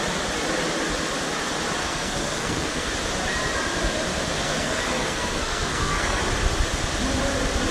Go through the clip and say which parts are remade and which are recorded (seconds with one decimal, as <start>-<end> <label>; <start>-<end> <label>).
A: 0.0-1.8 recorded; 1.8-2.9 remade; 2.9-4.4 recorded; 4.4-6.2 remade; 6.2-7.7 recorded